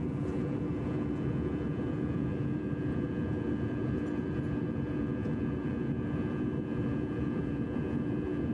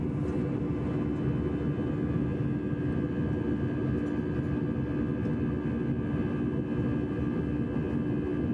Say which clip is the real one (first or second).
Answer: second